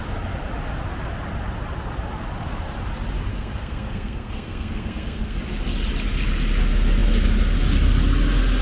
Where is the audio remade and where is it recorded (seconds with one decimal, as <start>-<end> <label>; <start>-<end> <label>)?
0.0-3.3 recorded; 3.3-5.4 remade; 5.4-8.6 recorded